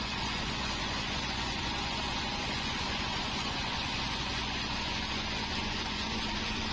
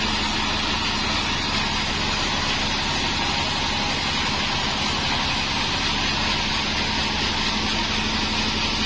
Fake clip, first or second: first